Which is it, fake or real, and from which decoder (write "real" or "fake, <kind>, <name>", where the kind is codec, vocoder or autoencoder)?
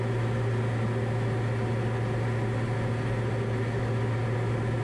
real